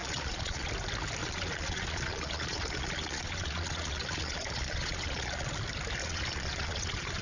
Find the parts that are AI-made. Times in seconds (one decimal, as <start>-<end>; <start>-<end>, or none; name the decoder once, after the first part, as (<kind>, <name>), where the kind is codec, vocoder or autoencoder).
0.0-0.7 (vocoder, Vocos); 1.2-5.5; 6.0-7.2